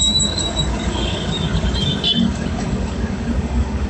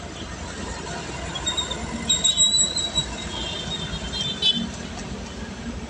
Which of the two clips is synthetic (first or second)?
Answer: first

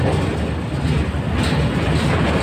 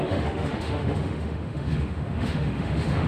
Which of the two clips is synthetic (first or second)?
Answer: second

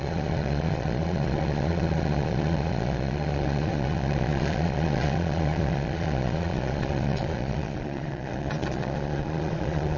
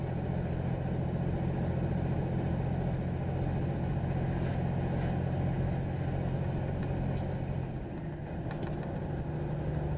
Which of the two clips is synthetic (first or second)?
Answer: first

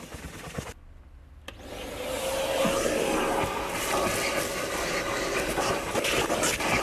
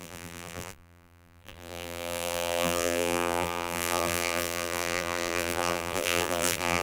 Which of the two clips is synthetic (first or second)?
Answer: second